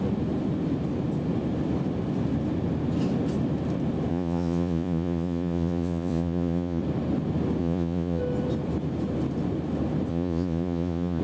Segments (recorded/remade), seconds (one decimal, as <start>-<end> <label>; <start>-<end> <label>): 0.0-4.1 recorded; 4.1-6.8 remade; 6.8-7.6 recorded; 7.6-8.2 remade; 8.2-10.1 recorded; 10.1-11.2 remade